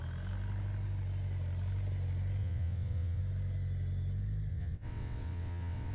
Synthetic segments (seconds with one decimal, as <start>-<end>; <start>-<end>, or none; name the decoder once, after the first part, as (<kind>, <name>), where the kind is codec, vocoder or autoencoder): 2.4-3.2 (vocoder, WaveNeXt); 4.5-5.9